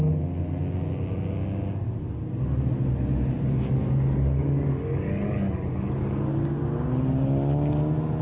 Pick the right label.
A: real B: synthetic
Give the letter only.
A